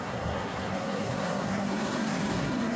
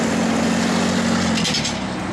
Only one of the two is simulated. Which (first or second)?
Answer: first